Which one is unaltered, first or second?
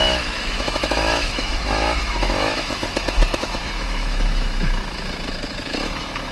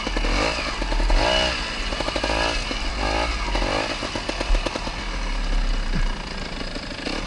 second